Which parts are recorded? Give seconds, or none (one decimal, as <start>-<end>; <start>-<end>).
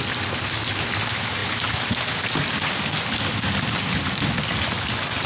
0.0-5.3